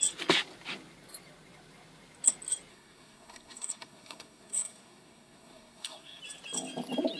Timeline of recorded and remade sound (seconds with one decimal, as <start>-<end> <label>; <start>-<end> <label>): 0.0-2.7 recorded; 2.7-6.2 remade; 6.2-7.2 recorded